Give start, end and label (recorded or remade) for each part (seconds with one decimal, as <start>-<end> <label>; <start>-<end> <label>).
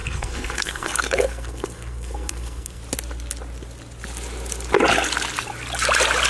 0.0-2.8 remade; 2.8-6.3 recorded